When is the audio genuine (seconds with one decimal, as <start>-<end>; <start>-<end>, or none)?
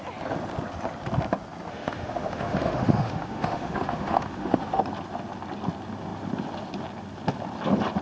0.0-1.7; 4.8-8.0